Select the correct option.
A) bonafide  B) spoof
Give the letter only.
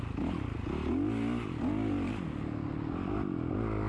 A